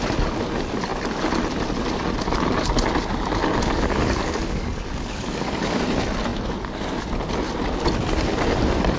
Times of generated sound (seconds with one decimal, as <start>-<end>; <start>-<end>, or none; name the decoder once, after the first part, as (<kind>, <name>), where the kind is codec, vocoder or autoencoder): 3.4-5.8 (codec, DAC)